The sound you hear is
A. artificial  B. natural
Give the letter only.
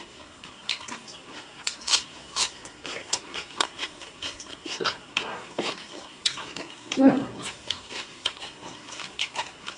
A